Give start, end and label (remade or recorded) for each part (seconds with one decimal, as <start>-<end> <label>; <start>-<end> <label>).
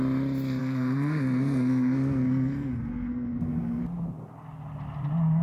0.0-0.6 recorded; 0.6-3.8 remade; 3.8-5.4 recorded